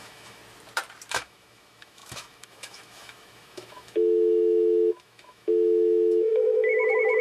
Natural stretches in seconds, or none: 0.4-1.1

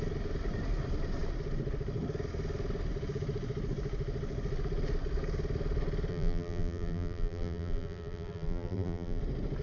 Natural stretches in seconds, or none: 0.0-6.1; 9.2-9.6

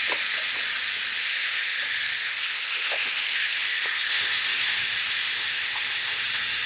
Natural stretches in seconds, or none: 0.0-1.3; 1.8-2.2; 6.2-6.7

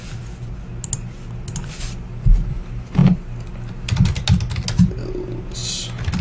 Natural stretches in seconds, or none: 0.0-6.2